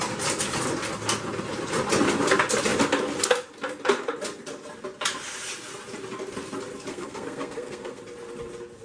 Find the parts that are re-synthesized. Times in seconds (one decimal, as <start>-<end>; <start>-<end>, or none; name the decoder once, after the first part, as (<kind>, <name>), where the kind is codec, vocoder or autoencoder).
6.9-8.0 (codec, SNAC)